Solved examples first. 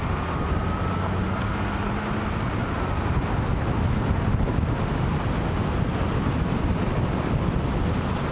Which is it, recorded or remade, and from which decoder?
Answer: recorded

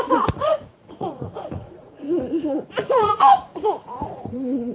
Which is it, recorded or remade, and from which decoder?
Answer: remade, vocoder, Vocos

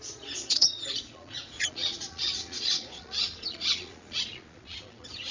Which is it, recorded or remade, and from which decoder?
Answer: remade, vocoder, Vocos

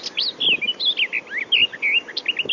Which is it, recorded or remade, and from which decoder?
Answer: recorded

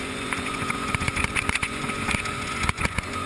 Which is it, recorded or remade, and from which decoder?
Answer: remade, vocoder, Vocos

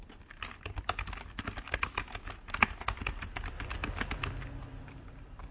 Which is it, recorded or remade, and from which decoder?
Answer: recorded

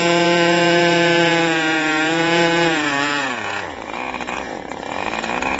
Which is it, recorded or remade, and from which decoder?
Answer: remade, vocoder, Vocos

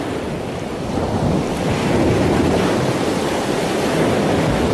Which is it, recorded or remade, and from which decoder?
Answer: recorded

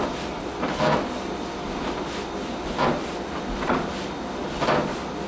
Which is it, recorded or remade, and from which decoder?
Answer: recorded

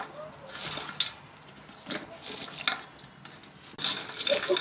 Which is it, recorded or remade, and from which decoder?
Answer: recorded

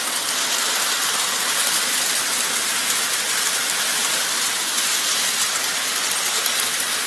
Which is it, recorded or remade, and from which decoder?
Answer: recorded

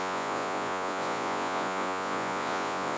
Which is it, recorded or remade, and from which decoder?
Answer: remade, vocoder, Vocos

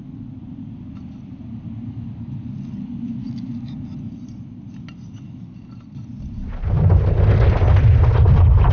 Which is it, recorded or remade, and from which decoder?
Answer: recorded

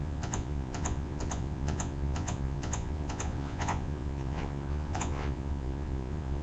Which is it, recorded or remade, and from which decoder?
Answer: remade, vocoder, Vocos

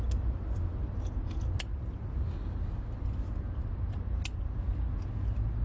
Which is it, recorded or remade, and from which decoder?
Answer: recorded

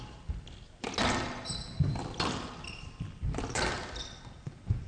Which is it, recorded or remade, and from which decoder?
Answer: recorded